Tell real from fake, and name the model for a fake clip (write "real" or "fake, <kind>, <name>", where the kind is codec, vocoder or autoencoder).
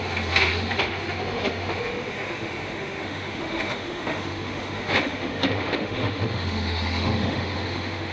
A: fake, autoencoder, DAC-VAE